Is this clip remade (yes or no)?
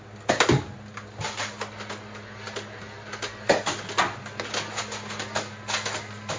no